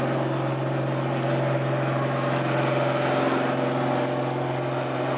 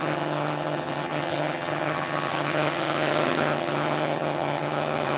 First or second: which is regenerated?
second